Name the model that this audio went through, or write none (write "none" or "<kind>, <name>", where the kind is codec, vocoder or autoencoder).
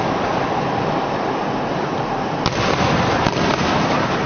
none